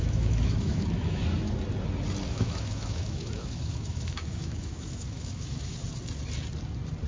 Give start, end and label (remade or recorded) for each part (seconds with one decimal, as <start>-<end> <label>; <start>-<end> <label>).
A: 0.0-1.2 remade; 1.2-2.3 recorded; 2.3-5.7 remade; 5.7-7.1 recorded